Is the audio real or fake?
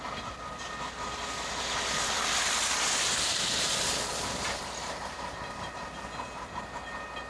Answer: real